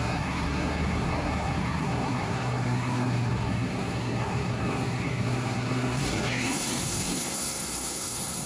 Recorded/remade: remade